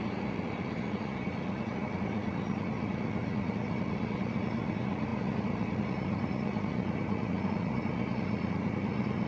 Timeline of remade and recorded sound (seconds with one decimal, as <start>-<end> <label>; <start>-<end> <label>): 0.0-9.3 remade